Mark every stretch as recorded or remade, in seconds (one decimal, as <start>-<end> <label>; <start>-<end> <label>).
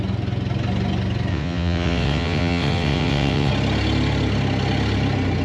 0.0-1.3 recorded; 1.3-3.5 remade; 3.5-5.4 recorded